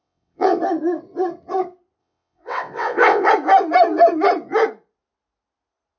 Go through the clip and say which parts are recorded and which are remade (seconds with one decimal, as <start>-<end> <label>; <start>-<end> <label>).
0.0-0.6 remade; 0.6-2.0 recorded; 2.0-3.3 remade; 3.3-6.0 recorded